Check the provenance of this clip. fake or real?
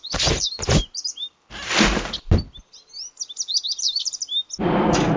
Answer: real